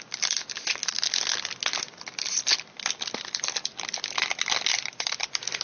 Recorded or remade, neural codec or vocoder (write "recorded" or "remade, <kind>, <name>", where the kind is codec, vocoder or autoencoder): recorded